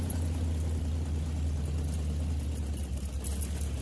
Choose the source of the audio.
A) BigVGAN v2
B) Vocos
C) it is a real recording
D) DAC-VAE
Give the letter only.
C